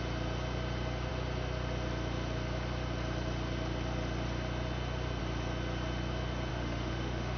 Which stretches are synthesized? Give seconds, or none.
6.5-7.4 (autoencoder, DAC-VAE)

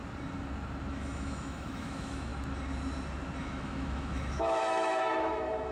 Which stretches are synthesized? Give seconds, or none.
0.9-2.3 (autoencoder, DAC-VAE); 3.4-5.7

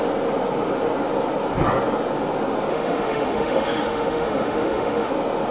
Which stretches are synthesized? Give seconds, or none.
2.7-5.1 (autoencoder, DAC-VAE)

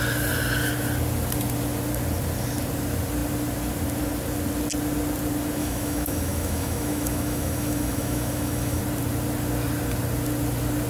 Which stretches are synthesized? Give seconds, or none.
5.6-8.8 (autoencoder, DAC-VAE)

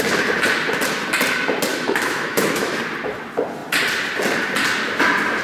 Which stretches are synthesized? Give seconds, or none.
1.7-2.8 (autoencoder, DAC-VAE)

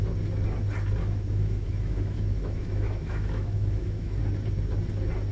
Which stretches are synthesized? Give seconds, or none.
1.0-4.2 (autoencoder, DAC-VAE)

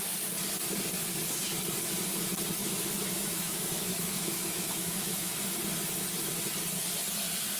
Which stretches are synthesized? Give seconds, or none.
2.6-5.3 (autoencoder, DAC-VAE)